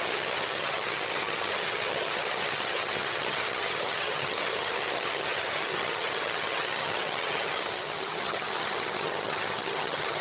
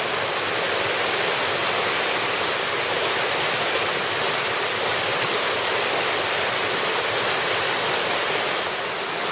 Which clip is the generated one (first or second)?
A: first